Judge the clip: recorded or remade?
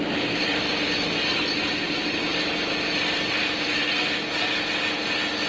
recorded